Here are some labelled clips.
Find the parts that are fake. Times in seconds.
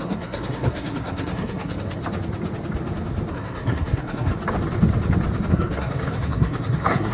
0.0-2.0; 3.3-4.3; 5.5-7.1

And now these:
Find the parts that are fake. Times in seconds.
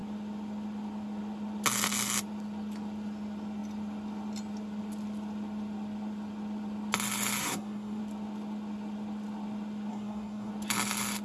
7.4-8.0; 9.9-10.5